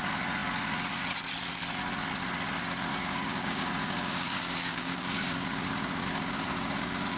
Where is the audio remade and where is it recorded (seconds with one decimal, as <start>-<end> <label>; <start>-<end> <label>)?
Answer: 0.0-2.9 recorded; 2.9-7.2 remade